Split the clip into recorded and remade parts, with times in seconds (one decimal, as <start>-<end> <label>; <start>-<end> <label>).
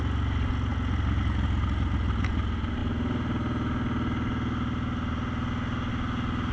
0.0-6.5 recorded